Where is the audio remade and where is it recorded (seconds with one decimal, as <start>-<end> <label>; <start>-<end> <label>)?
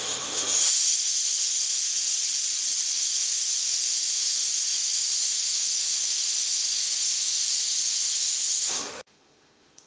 0.0-2.1 remade; 2.1-3.0 recorded; 3.0-9.9 remade